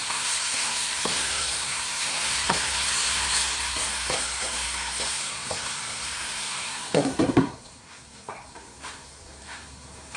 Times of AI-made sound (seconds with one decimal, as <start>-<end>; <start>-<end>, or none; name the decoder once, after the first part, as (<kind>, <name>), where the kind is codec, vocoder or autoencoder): 0.0-10.2 (codec, SNAC)